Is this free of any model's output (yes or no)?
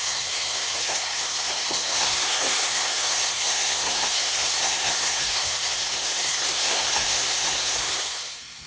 no